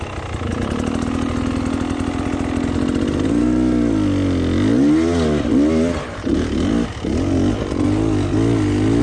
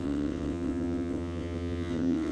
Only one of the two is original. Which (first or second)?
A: first